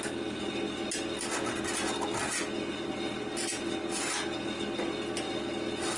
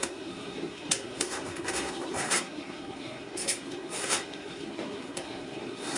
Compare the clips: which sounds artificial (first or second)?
second